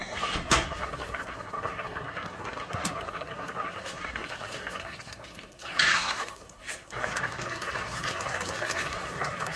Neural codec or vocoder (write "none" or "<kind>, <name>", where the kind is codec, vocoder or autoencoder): codec, SNAC